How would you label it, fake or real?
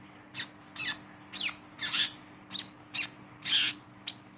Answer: real